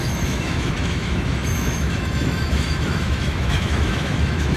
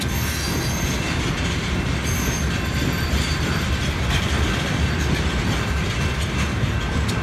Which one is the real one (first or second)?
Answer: second